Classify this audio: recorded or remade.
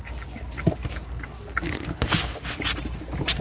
recorded